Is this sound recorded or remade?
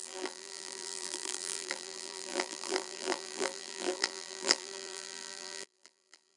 remade